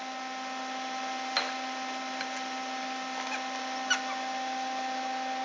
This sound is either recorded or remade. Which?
recorded